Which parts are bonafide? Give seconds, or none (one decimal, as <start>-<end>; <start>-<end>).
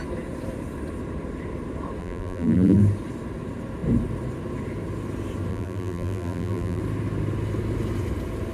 0.0-2.0; 2.8-5.5; 6.8-8.5